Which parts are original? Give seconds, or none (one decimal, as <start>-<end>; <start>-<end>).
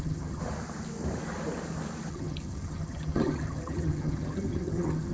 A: 0.4-2.1